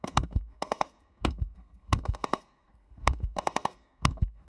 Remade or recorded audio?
remade